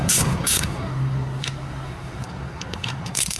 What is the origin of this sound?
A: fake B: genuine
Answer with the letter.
A